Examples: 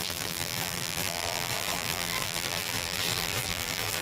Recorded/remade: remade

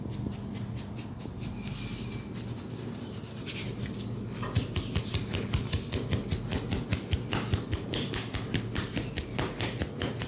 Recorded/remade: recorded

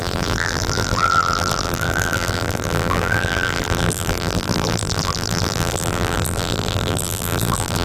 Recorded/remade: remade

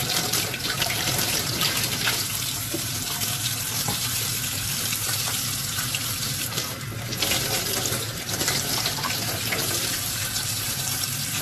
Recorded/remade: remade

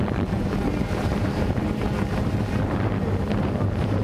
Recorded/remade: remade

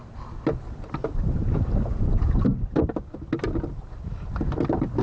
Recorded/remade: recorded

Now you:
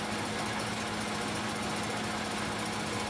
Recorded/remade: recorded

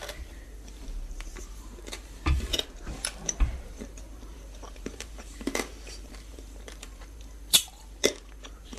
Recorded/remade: remade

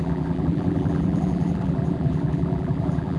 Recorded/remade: remade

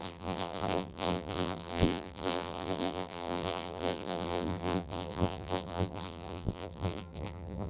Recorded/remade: remade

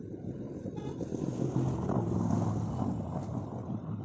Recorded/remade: recorded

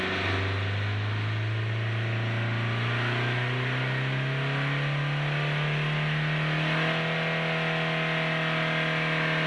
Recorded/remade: recorded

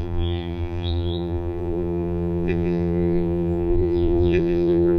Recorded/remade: remade